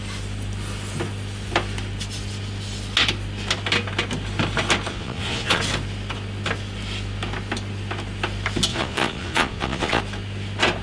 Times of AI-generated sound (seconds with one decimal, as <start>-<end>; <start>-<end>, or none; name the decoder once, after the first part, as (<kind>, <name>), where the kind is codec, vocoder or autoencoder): 4.9-5.6 (vocoder, Vocos); 8.7-10.0